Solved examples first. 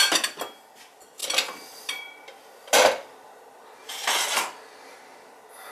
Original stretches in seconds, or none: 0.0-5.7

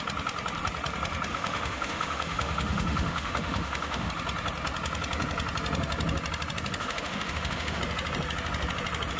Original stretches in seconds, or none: 0.0-1.3; 4.1-6.8; 7.8-9.2

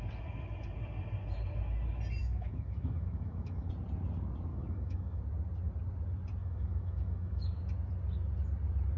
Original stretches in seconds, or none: 0.0-2.2; 3.7-4.5; 5.2-6.4; 7.6-9.0

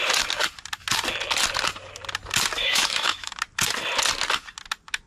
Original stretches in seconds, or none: 0.0-2.6; 3.4-5.1

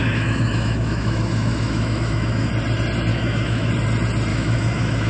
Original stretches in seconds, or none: 2.5-3.1; 3.7-4.3

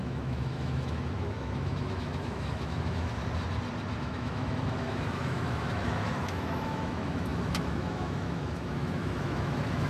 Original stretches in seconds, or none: 3.2-4.0

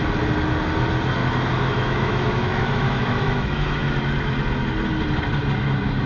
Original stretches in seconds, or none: 0.0-1.2; 4.0-6.1

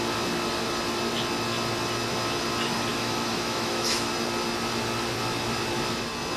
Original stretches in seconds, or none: 0.0-2.9; 4.1-6.4